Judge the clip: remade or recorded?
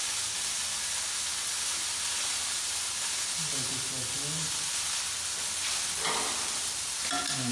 recorded